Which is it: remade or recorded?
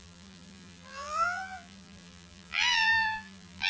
remade